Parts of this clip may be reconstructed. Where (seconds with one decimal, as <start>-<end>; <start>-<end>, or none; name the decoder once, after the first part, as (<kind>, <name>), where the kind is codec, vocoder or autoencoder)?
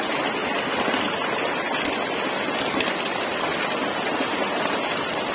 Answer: none